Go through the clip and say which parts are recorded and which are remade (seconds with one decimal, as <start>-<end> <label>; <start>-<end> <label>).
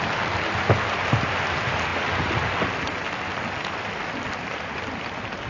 0.0-5.5 recorded